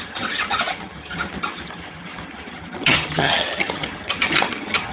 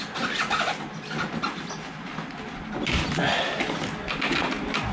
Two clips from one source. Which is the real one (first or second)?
second